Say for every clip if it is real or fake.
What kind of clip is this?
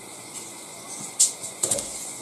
fake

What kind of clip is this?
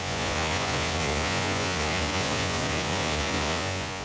fake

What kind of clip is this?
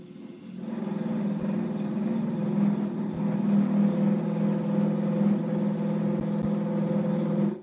real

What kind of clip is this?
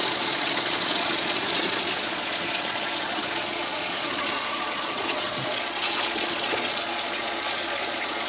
fake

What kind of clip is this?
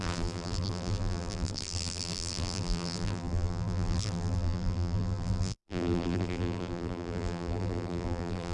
fake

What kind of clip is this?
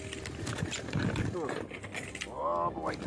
real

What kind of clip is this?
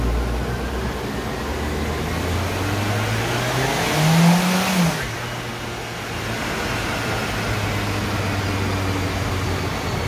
real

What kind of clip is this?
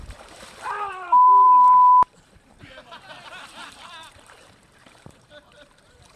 fake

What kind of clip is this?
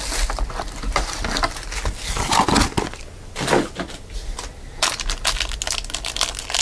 real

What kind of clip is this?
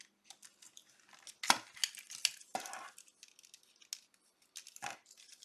real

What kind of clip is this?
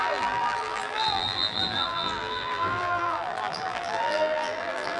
fake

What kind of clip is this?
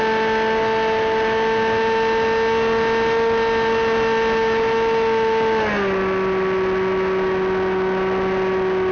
real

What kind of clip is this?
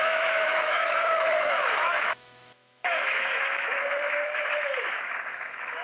fake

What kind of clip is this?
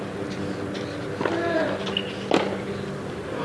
real